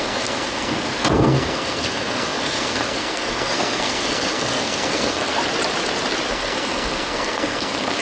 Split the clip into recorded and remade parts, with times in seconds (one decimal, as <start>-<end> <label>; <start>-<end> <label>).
0.0-5.4 remade; 5.4-6.3 recorded; 6.3-8.0 remade